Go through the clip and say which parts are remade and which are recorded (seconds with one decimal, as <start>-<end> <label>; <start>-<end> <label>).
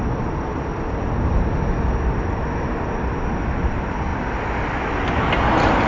0.0-5.9 recorded